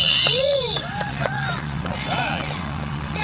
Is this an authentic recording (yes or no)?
no